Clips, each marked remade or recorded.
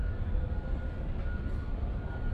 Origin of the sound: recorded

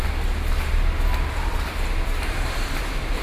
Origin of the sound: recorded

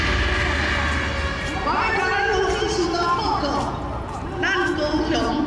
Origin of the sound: recorded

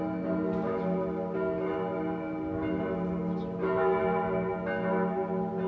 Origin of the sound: recorded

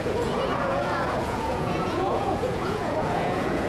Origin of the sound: remade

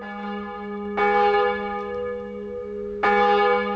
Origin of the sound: recorded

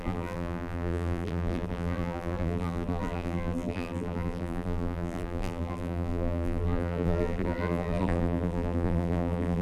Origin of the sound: remade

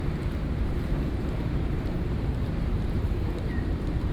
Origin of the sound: remade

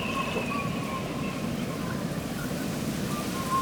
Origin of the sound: remade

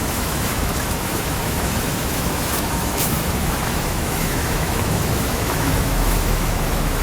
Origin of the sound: remade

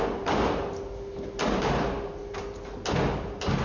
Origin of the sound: recorded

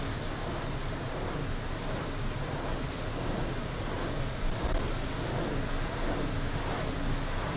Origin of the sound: recorded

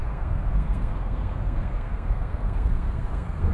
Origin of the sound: remade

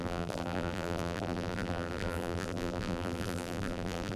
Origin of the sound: remade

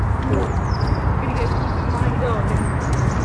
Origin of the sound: recorded